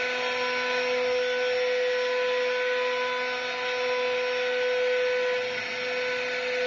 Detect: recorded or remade recorded